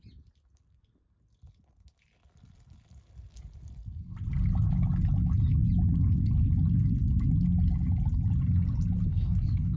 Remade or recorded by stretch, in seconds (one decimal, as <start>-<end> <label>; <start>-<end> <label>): 0.0-9.1 recorded; 9.1-9.8 remade